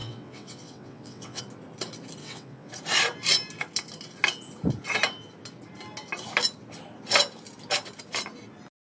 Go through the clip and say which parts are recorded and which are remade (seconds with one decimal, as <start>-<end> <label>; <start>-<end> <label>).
0.0-1.4 remade; 1.4-2.2 recorded; 2.2-2.7 remade; 2.7-8.9 recorded